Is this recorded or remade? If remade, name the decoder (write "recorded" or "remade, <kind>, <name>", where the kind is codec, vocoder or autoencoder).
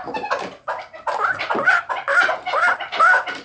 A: recorded